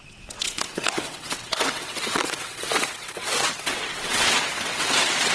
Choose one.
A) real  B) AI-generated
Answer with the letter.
B